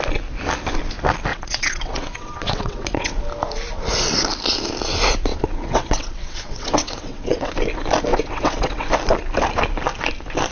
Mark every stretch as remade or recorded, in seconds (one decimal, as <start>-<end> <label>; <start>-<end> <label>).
0.0-1.3 recorded; 1.3-3.2 remade; 3.2-5.3 recorded; 5.3-7.5 remade; 7.5-8.1 recorded; 8.1-8.9 remade; 8.9-10.5 recorded